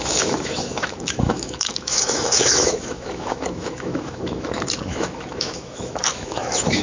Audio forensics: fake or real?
fake